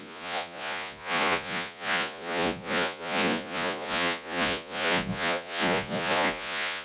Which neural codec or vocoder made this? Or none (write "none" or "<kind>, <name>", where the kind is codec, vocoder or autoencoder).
vocoder, Vocos